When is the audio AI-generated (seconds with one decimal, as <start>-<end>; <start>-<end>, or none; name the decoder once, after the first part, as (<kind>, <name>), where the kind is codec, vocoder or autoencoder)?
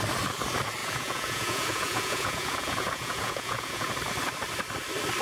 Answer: 0.8-3.9 (vocoder, Vocos)